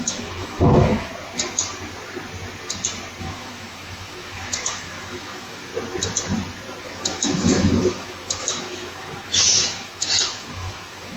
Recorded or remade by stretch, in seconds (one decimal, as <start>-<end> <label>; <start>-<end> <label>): 0.0-1.1 remade; 1.1-3.2 recorded; 3.2-5.7 remade; 5.7-6.8 recorded; 6.8-11.2 remade